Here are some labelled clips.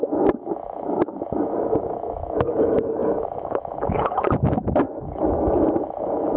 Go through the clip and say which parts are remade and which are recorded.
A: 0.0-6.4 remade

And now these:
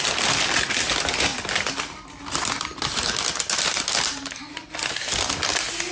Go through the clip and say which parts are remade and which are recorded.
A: 0.0-5.9 recorded

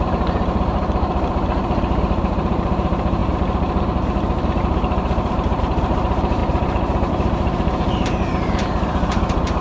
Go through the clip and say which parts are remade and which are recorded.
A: 0.0-9.6 remade

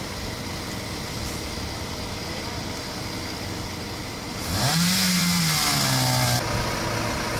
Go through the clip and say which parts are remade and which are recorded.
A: 0.0-4.3 recorded; 4.3-5.4 remade; 5.4-7.4 recorded

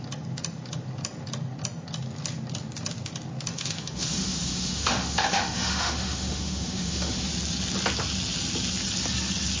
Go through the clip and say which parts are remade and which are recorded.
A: 0.0-3.5 recorded; 3.5-7.3 remade; 7.3-9.6 recorded

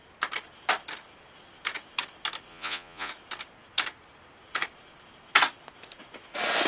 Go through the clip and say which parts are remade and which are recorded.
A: 0.0-2.5 recorded; 2.5-3.1 remade; 3.1-6.7 recorded

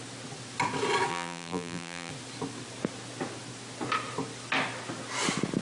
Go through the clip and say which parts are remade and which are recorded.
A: 0.0-1.1 recorded; 1.1-2.1 remade; 2.1-5.6 recorded

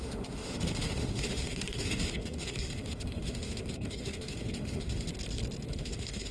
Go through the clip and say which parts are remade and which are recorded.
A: 0.0-5.1 remade; 5.1-5.7 recorded; 5.7-6.3 remade